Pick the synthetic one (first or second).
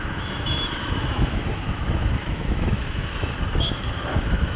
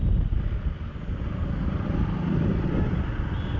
first